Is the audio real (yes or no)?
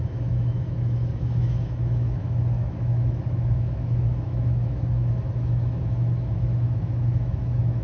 no